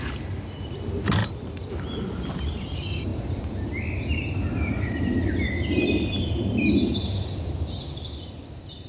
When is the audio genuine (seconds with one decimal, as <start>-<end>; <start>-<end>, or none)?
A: 0.0-1.2; 1.7-8.9